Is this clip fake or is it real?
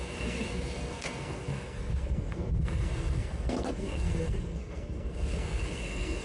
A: fake